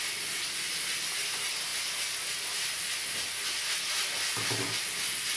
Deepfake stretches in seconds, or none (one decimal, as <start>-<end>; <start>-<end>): none